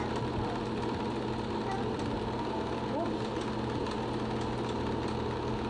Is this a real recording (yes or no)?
yes